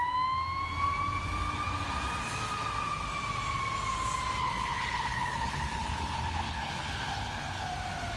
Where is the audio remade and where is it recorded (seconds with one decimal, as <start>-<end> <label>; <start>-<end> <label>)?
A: 0.0-4.4 recorded; 4.4-7.7 remade; 7.7-8.2 recorded